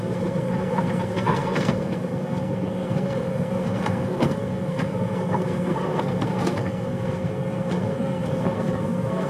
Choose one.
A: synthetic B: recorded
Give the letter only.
A